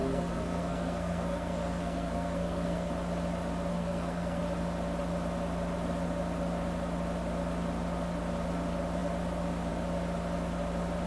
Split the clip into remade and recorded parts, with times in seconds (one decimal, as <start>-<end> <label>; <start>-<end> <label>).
0.0-2.9 remade; 2.9-3.7 recorded; 3.7-4.4 remade; 4.4-11.1 recorded

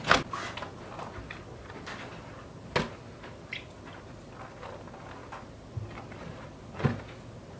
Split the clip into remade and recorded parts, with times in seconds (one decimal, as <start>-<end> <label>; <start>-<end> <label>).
0.0-7.6 recorded

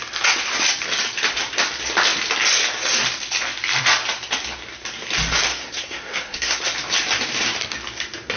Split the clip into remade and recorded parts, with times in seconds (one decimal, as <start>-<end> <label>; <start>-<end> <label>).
0.0-5.5 recorded; 5.5-6.6 remade; 6.6-8.4 recorded

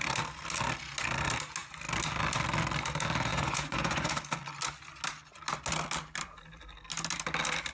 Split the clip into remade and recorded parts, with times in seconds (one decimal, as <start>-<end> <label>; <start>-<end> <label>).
0.0-3.3 recorded; 3.3-4.1 remade; 4.1-7.7 recorded